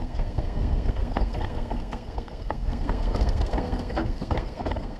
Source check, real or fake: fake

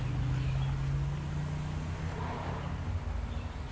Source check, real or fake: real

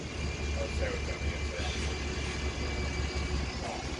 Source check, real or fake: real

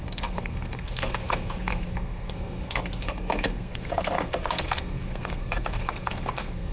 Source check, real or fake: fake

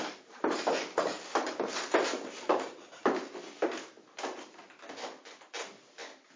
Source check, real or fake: real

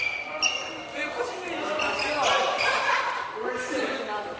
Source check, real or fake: real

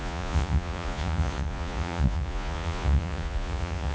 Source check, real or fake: fake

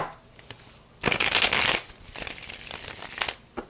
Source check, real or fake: real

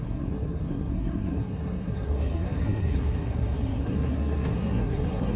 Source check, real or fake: fake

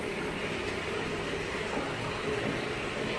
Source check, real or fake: real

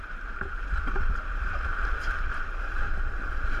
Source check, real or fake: fake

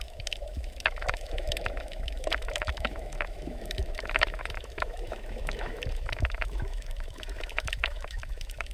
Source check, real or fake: fake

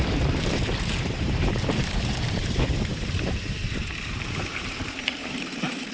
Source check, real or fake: fake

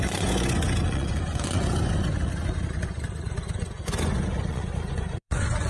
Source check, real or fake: fake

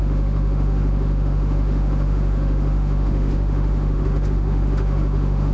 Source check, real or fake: fake